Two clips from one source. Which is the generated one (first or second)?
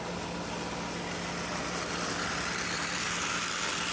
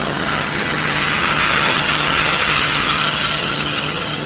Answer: second